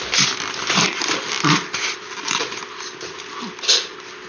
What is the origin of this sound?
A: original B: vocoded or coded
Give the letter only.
A